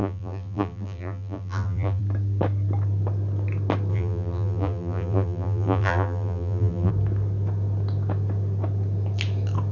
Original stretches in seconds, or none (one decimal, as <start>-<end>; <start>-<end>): 2.0-3.9; 6.9-9.7